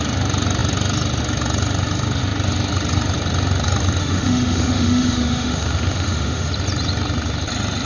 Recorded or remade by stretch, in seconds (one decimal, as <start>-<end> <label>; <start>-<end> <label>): 0.0-4.0 recorded; 4.0-6.5 remade; 6.5-7.9 recorded